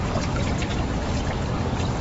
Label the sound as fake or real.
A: real